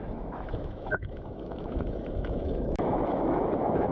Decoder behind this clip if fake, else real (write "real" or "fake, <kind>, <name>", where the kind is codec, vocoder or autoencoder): fake, autoencoder, DAC-VAE